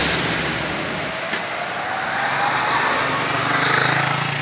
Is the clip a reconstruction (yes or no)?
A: no